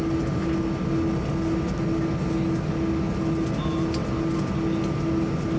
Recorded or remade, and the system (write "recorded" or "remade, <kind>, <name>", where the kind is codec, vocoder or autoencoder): recorded